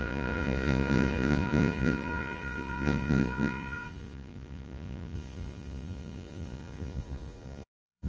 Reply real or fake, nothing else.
fake